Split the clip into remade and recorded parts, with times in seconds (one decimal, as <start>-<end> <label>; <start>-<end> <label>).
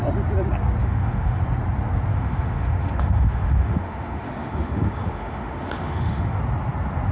0.0-0.8 recorded; 0.8-1.4 remade; 1.4-2.1 recorded; 2.1-6.4 remade; 6.4-7.1 recorded